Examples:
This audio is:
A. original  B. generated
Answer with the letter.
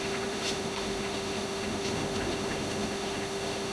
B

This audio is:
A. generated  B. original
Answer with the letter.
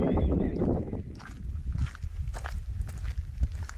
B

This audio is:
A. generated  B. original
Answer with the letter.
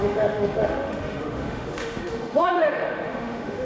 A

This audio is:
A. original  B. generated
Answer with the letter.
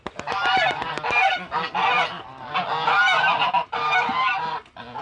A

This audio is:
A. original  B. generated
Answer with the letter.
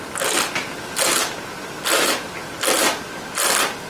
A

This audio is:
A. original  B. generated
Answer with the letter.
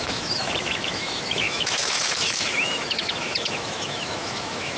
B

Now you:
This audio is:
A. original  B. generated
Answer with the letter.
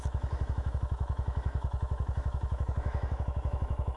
B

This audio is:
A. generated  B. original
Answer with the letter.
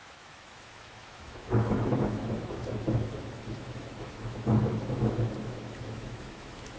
A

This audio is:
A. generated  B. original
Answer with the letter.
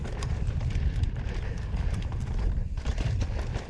B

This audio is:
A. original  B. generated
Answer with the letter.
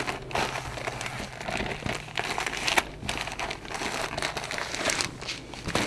A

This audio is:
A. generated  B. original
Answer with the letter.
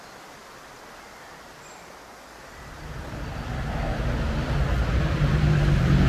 B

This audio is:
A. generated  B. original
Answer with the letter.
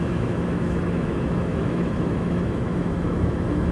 A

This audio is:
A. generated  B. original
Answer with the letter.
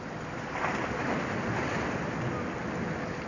B